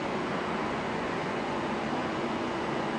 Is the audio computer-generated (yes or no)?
yes